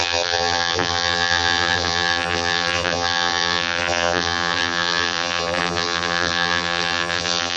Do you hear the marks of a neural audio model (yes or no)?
yes